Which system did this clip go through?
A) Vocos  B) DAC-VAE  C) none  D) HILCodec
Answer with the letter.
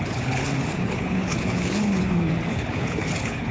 D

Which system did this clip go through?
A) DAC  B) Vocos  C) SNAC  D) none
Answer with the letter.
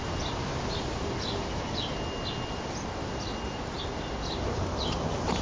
D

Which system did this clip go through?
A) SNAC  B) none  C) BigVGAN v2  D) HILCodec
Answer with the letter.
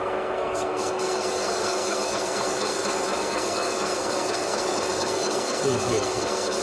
A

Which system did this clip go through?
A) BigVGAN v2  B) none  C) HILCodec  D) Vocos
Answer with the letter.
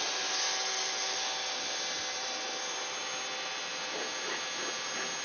B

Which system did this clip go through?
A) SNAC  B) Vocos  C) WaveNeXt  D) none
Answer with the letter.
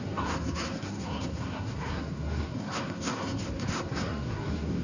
A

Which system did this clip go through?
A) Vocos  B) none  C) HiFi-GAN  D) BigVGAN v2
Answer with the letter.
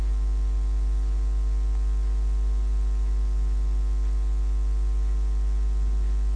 B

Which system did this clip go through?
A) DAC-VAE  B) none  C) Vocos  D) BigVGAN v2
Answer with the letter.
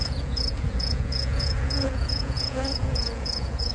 C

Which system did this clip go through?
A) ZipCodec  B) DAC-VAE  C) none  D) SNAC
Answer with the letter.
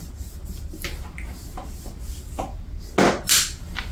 C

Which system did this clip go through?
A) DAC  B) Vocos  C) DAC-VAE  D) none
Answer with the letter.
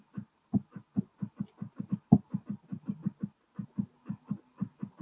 D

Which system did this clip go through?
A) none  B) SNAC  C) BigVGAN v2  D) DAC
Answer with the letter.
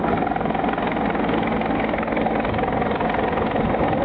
A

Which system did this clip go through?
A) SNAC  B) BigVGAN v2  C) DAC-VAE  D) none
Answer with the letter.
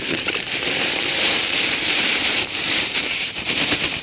B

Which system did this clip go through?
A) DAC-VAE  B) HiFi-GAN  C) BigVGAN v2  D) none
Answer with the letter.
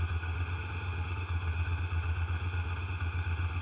A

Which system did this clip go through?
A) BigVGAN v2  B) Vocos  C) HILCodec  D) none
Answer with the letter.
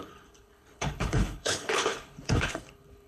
C